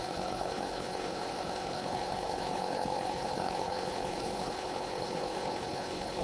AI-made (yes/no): yes